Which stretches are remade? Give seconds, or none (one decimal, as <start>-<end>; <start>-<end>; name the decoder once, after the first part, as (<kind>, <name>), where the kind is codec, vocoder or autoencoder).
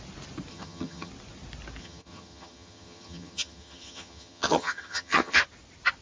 0.5-1.1 (vocoder, HiFi-GAN); 1.8-5.4